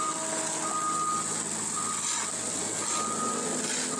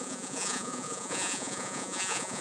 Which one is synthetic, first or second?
second